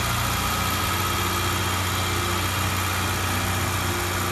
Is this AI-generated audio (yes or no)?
no